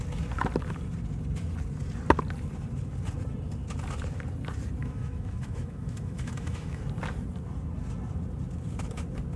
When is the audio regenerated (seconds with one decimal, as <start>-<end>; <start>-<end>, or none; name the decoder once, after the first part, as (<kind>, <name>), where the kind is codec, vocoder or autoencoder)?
4.8-6.8 (autoencoder, DAC-VAE)